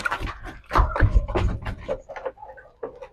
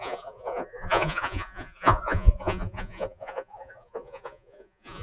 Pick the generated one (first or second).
second